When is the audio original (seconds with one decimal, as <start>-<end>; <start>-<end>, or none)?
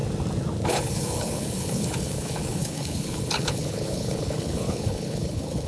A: 0.0-0.7